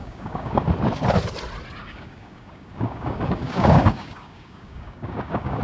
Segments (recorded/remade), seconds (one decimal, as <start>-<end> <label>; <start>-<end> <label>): 0.0-0.6 remade; 0.6-1.8 recorded; 1.8-5.6 remade